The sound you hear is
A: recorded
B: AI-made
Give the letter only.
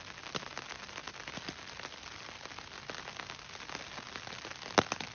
A